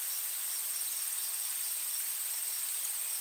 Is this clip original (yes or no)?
no